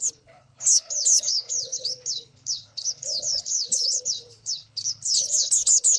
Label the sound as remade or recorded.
remade